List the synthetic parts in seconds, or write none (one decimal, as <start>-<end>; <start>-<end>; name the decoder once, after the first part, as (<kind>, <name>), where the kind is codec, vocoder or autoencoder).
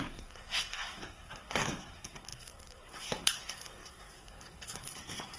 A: 0.0-5.4 (codec, SNAC)